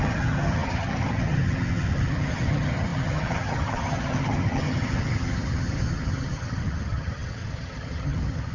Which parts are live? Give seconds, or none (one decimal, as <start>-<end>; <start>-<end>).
none